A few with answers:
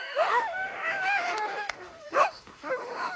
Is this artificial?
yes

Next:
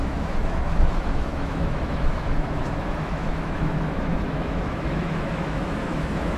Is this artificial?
yes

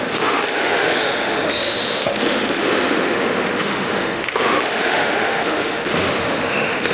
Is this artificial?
yes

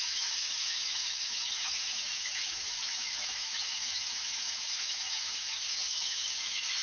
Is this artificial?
yes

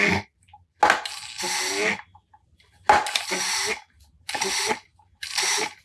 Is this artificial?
no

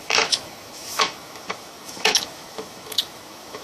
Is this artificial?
yes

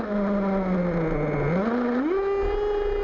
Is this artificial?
no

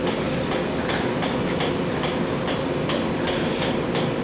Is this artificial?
no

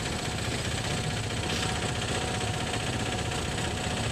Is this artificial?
no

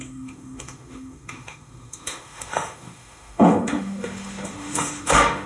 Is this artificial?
yes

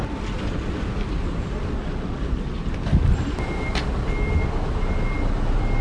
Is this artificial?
no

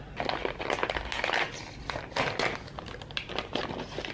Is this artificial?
no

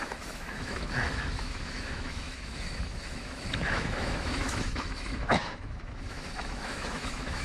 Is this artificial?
yes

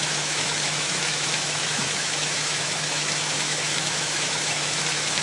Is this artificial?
yes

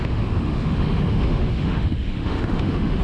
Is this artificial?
yes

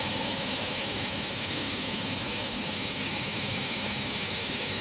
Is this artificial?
yes